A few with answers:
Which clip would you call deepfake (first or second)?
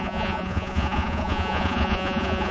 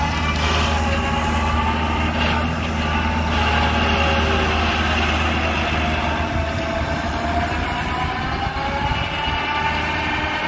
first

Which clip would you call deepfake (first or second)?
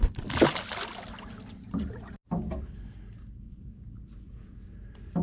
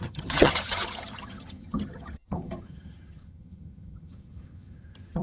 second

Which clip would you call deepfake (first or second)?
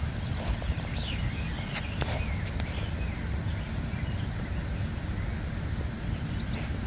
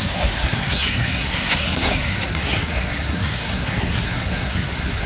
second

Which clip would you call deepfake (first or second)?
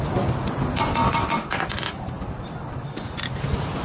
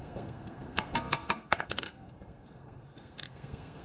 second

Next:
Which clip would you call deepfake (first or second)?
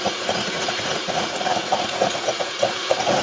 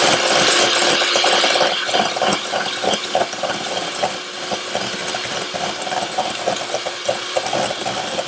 first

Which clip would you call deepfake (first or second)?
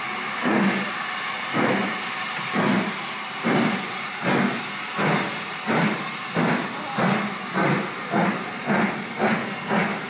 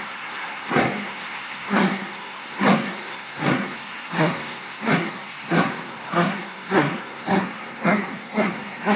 second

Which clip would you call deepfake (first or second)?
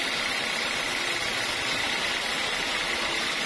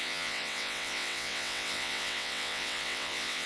second